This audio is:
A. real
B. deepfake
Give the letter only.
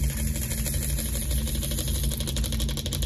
A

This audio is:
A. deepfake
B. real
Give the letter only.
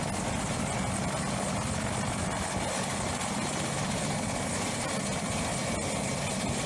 B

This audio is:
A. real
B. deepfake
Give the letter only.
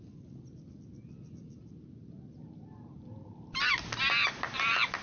A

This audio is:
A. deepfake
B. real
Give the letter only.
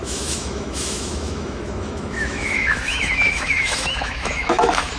A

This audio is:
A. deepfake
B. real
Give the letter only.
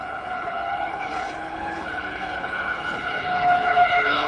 A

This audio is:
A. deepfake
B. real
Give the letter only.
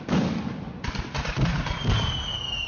B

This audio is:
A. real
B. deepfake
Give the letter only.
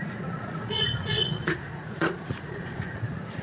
B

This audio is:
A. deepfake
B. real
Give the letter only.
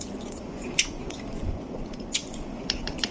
A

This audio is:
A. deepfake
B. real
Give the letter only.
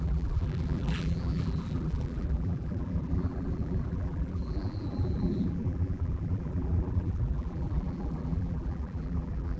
A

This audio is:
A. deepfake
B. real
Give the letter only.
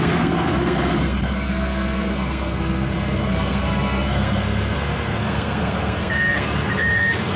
A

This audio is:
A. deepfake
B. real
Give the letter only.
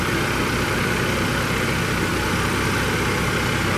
B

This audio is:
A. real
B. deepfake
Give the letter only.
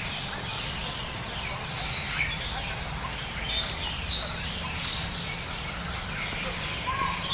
A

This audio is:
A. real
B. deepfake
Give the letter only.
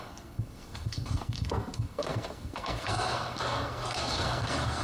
B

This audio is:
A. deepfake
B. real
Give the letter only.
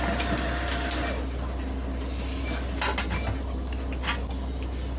B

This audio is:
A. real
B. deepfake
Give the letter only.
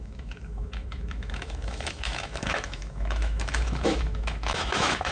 B